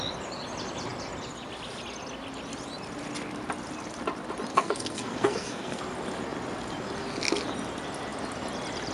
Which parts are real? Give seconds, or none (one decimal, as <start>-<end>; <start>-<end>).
0.0-4.5; 5.8-8.9